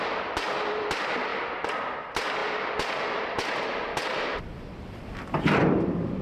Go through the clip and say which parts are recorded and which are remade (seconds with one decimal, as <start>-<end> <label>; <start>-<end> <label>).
0.0-1.3 remade; 1.3-1.8 recorded; 1.8-6.2 remade